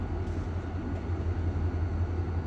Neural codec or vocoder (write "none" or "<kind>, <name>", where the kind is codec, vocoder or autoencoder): none